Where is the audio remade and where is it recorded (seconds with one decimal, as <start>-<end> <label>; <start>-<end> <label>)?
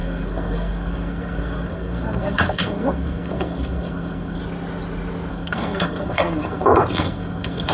0.0-4.4 remade; 4.4-5.3 recorded; 5.3-7.7 remade